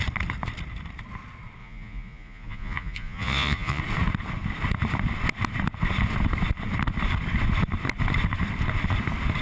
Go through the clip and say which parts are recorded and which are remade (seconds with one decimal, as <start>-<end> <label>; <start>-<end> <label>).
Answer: 0.0-1.6 recorded; 1.6-3.8 remade; 3.8-9.4 recorded